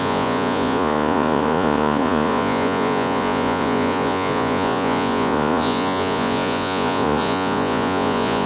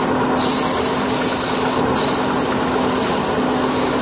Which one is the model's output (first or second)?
first